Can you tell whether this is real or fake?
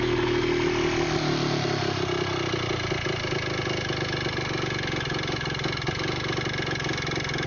real